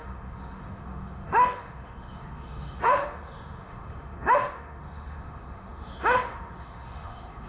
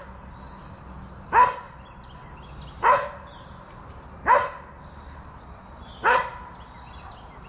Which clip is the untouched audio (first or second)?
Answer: second